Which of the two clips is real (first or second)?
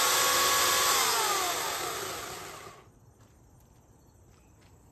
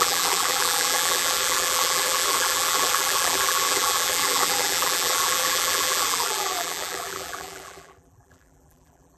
first